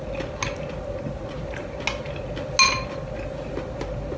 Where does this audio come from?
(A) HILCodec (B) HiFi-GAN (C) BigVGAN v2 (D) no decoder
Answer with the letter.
D